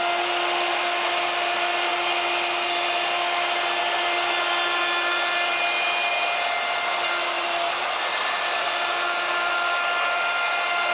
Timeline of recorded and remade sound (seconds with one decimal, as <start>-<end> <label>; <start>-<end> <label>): 0.0-10.9 recorded